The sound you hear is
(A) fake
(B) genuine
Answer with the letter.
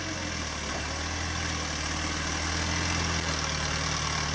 B